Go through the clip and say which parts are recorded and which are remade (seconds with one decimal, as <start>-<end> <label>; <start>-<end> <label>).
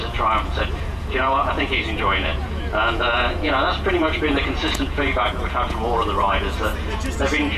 0.0-7.6 remade